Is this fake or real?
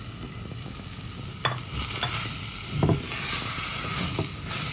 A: real